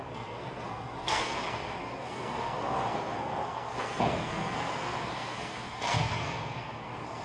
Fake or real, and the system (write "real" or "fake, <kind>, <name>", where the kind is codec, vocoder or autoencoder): fake, codec, SNAC